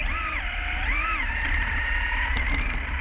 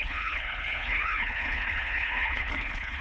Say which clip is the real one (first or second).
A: first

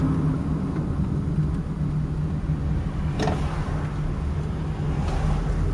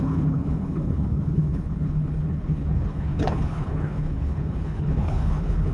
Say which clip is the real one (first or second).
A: first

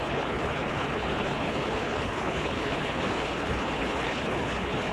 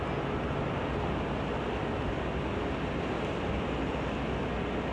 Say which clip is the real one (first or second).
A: second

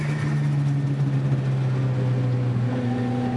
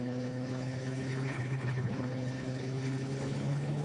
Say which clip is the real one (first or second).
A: first